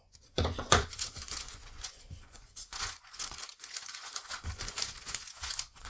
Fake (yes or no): yes